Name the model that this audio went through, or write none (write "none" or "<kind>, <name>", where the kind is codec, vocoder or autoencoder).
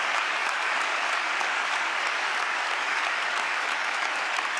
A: codec, DAC